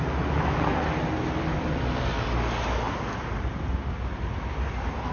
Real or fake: real